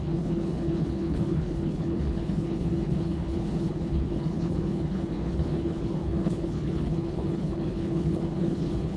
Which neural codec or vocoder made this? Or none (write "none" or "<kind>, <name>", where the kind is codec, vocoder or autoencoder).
codec, HILCodec